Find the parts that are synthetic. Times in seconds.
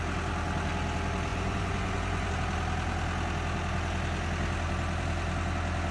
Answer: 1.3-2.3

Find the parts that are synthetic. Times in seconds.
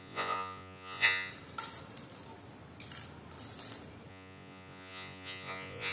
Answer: 0.0-1.3; 4.1-5.9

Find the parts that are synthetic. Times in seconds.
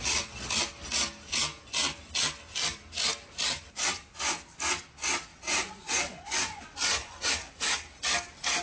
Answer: 5.3-7.3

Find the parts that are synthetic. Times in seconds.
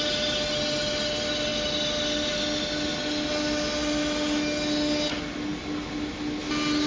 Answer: none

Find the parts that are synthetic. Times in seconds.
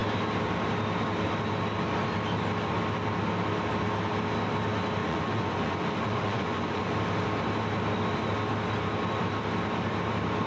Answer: 5.0-6.8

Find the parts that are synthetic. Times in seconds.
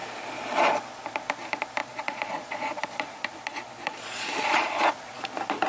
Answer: 1.8-5.2